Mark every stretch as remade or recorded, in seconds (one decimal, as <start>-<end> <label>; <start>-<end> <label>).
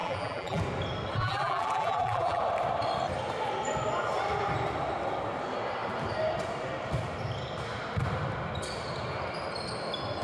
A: 0.0-0.6 remade; 0.6-1.2 recorded; 1.2-2.4 remade; 2.4-10.2 recorded